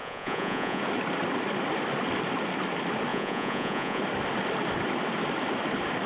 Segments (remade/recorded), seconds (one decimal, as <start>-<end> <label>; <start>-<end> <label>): 0.0-0.8 remade; 0.8-3.1 recorded; 3.1-4.0 remade; 4.0-6.1 recorded